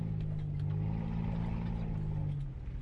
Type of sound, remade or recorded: recorded